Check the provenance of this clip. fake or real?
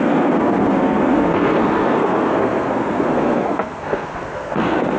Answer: fake